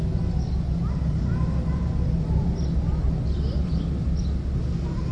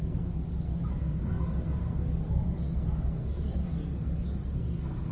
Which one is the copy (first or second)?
second